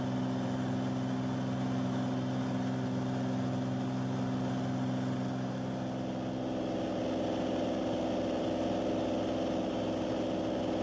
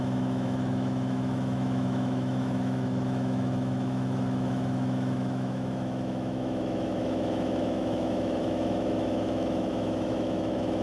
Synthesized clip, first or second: second